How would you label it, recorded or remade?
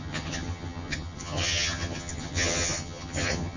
remade